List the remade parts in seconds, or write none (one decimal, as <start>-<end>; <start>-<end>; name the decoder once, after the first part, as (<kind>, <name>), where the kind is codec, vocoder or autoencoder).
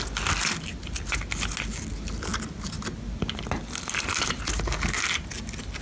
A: none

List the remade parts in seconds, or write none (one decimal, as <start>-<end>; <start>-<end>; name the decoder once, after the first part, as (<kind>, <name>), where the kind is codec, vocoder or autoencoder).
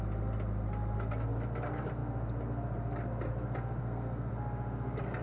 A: 3.8-4.3 (codec, SNAC)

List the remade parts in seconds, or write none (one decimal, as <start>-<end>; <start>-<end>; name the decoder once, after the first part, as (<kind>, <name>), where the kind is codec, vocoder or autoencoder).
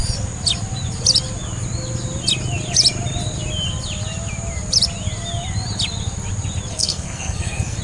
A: 6.7-7.8 (codec, SNAC)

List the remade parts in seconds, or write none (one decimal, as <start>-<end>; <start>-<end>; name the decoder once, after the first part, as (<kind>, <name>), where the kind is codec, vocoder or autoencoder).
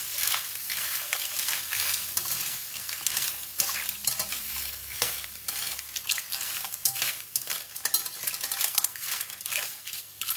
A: 0.0-3.8 (codec, SNAC); 4.3-7.8; 8.6-10.4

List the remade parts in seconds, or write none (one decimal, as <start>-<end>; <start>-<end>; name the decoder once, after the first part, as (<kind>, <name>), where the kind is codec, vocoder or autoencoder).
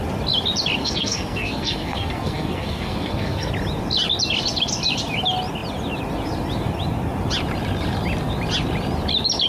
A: 0.8-3.5 (codec, SNAC)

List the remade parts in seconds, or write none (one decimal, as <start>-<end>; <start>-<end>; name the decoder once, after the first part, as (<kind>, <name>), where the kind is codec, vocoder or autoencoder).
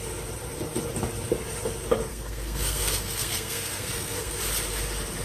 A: 2.1-4.4 (codec, SNAC)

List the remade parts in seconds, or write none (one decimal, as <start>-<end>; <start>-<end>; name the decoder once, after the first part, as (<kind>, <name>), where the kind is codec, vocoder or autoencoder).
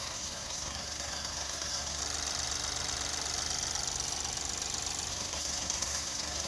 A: 0.0-2.0 (codec, SNAC); 5.1-6.5